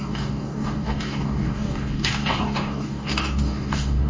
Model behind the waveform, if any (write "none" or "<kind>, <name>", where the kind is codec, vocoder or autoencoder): codec, DAC